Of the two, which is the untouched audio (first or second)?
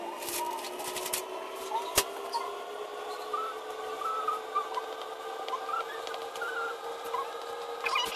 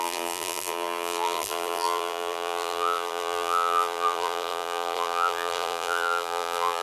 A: first